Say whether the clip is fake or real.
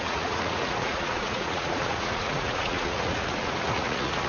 fake